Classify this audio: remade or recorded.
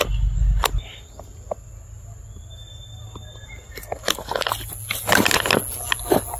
recorded